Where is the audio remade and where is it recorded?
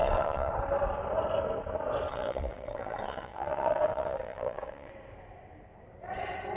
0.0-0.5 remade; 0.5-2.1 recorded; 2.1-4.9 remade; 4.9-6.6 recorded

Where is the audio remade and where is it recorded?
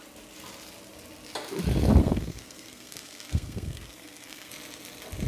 0.0-2.0 recorded; 2.0-4.5 remade; 4.5-5.3 recorded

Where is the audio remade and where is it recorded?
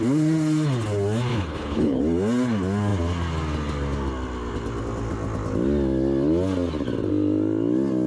0.0-1.3 recorded; 1.3-2.0 remade; 2.0-8.1 recorded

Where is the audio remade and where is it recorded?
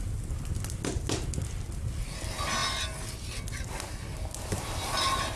0.0-5.4 recorded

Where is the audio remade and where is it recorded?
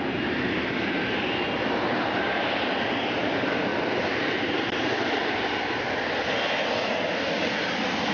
0.0-8.1 recorded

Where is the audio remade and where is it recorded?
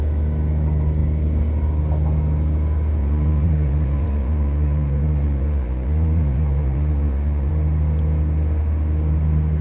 0.0-3.0 recorded; 3.0-7.5 remade; 7.5-9.6 recorded